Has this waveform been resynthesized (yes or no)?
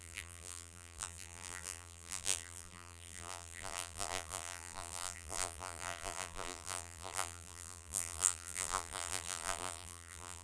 yes